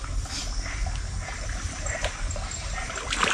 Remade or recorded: recorded